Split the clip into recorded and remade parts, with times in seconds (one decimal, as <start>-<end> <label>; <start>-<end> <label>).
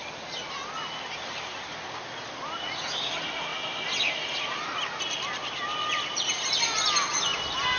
0.0-7.8 recorded